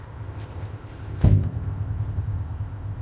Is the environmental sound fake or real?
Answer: fake